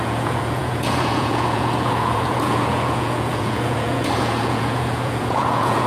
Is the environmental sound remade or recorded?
remade